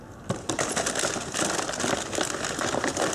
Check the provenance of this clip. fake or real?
real